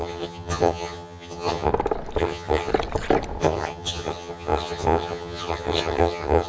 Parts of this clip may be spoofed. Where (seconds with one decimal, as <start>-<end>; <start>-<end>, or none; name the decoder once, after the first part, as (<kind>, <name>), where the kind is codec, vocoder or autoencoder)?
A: 0.0-1.7 (vocoder, HiFi-GAN); 2.2-2.7; 3.4-6.5

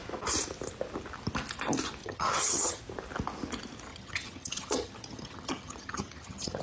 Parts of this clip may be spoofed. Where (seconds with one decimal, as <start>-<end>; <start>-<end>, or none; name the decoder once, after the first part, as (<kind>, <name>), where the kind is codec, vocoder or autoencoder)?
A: 2.0-2.8 (vocoder, HiFi-GAN); 3.9-6.6

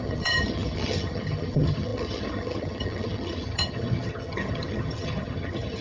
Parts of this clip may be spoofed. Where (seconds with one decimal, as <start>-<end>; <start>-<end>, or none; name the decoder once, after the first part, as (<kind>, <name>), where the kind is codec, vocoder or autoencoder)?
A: 0.0-5.8 (vocoder, HiFi-GAN)